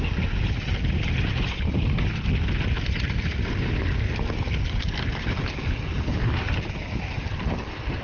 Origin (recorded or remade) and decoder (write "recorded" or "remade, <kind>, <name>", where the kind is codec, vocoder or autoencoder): recorded